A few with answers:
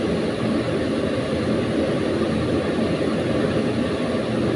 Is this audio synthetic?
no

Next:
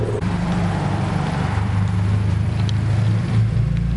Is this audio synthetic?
yes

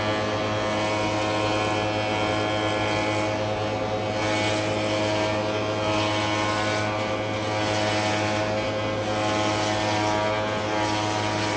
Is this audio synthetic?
no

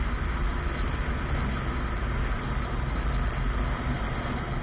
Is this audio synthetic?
no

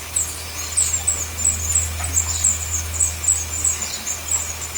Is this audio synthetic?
no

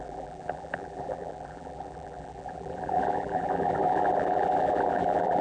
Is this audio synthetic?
yes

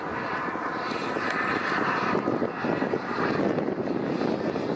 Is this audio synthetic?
no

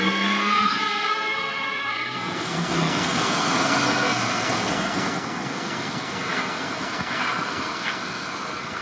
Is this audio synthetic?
yes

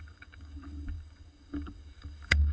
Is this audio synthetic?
yes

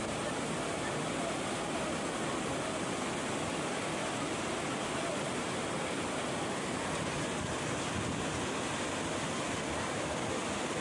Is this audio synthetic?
no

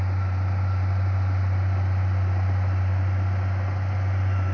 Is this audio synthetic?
no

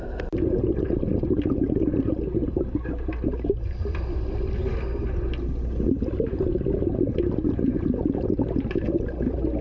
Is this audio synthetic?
no